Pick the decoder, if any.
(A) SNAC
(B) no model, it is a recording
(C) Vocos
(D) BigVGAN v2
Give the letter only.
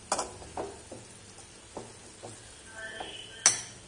B